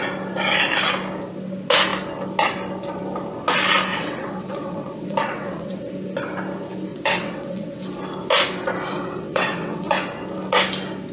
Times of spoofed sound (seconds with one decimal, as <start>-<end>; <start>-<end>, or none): 3.9-5.9; 6.9-7.8; 8.9-9.9